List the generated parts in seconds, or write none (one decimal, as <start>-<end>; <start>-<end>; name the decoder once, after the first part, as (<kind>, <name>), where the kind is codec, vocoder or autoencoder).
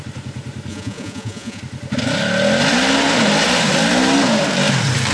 0.7-1.6 (vocoder, Vocos)